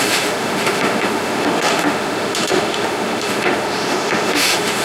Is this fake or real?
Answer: fake